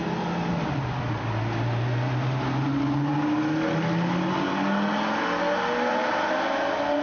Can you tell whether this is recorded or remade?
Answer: recorded